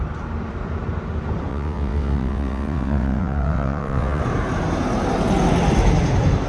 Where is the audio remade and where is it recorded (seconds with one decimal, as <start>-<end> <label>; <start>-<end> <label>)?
0.0-1.5 recorded; 1.5-4.2 remade; 4.2-6.5 recorded